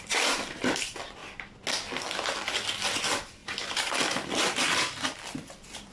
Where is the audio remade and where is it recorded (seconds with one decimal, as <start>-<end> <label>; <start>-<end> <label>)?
0.0-1.2 remade; 1.2-3.0 recorded; 3.0-5.9 remade

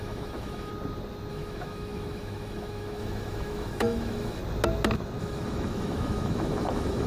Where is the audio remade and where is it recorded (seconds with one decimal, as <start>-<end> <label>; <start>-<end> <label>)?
0.0-0.7 remade; 0.7-1.3 recorded; 1.3-4.4 remade; 4.4-5.2 recorded; 5.2-7.1 remade

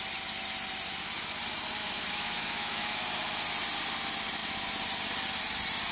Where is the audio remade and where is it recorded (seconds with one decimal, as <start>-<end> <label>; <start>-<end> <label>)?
0.0-1.8 recorded; 1.8-3.0 remade; 3.0-5.9 recorded

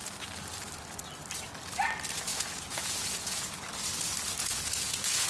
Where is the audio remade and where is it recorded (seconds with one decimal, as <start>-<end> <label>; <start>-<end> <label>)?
0.0-2.3 recorded; 2.3-3.6 remade; 3.6-4.4 recorded; 4.4-5.3 remade

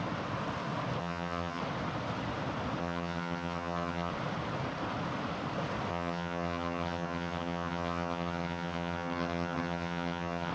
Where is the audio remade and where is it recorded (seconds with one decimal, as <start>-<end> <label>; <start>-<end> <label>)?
0.0-1.0 recorded; 1.0-1.6 remade; 1.6-2.8 recorded; 2.8-4.1 remade; 4.1-5.9 recorded; 5.9-10.5 remade